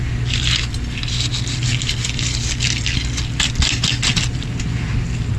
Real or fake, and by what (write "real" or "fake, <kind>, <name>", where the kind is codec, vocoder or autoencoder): real